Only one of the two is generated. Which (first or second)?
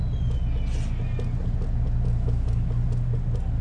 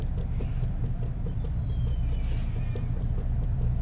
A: second